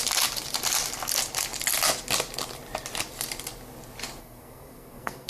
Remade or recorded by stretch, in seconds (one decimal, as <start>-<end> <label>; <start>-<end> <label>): 0.0-4.2 recorded; 4.2-5.3 remade